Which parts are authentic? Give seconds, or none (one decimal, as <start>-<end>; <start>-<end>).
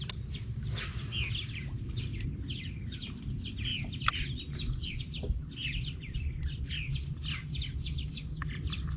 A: 0.9-2.0; 7.2-8.5